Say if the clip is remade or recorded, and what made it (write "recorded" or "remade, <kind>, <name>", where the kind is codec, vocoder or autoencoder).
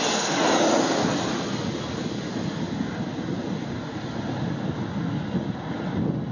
recorded